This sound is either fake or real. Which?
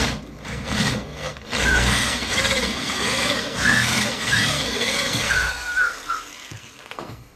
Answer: fake